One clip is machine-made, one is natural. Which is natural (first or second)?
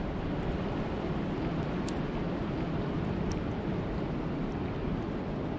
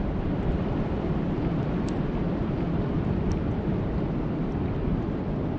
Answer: first